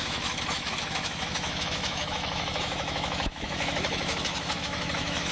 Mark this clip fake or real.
fake